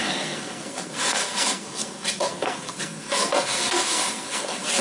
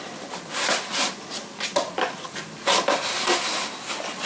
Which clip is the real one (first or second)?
second